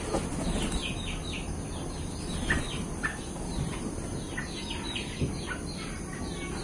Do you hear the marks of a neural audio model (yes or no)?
no